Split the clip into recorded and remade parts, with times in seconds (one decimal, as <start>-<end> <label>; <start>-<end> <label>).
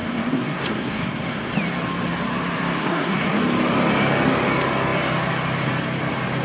0.0-1.5 remade; 1.5-2.8 recorded; 2.8-3.4 remade; 3.4-6.4 recorded